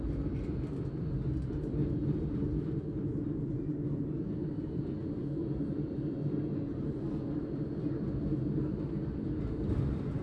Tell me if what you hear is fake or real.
fake